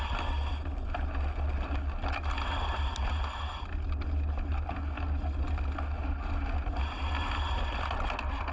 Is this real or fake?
real